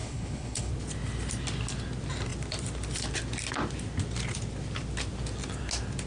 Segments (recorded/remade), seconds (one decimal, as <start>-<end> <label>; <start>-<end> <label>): 0.0-0.7 remade; 0.7-6.1 recorded